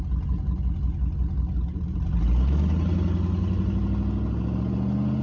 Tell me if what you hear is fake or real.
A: real